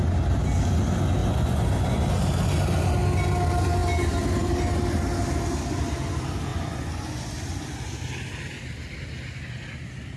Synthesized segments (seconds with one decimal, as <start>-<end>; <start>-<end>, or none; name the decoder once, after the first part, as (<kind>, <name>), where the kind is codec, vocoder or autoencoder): 1.2-2.0 (vocoder, Vocos); 6.5-7.3